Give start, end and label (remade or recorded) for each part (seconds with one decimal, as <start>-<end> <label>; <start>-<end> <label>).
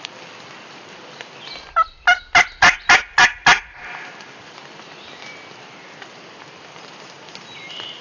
0.0-8.0 recorded